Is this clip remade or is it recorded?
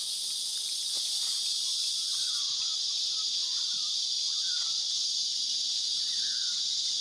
remade